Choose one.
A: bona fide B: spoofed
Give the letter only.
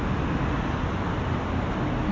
A